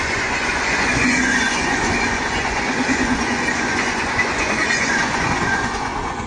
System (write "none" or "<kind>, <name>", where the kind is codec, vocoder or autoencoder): vocoder, Vocos